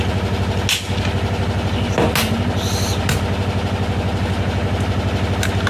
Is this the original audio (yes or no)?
yes